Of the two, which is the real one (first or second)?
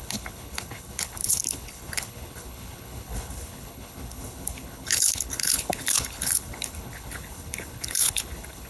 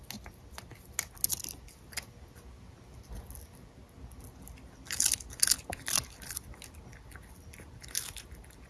second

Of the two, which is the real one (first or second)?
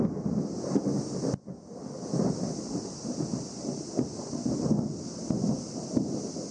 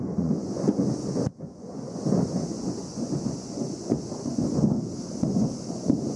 first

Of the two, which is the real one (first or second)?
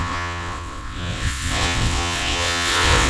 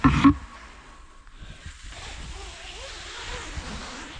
second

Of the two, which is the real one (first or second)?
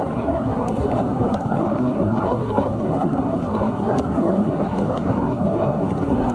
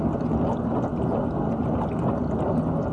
second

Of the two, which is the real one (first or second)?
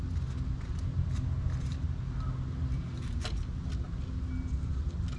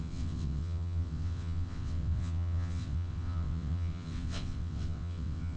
first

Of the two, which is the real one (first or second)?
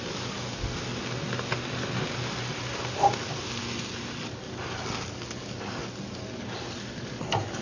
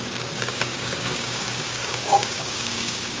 first